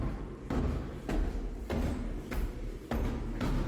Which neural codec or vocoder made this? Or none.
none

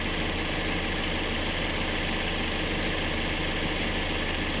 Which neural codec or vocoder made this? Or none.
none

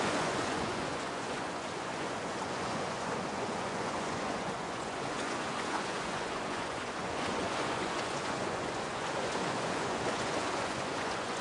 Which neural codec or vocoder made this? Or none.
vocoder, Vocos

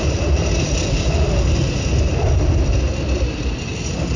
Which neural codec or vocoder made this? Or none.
none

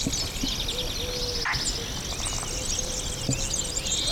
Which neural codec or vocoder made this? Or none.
none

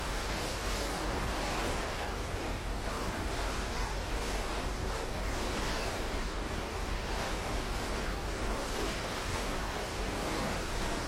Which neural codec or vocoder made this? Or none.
codec, DAC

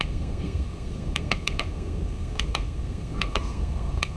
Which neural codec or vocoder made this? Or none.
codec, SNAC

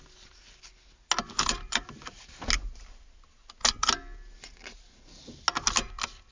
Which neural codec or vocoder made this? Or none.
none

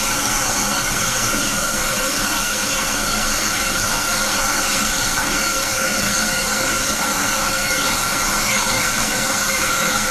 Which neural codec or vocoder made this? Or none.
codec, SNAC